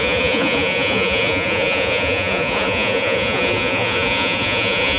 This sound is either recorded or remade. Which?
remade